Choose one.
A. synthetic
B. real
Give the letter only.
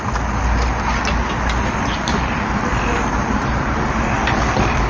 B